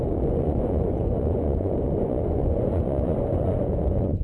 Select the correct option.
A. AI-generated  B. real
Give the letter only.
A